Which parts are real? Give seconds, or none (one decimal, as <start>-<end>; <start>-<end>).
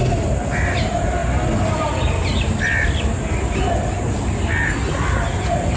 0.0-5.8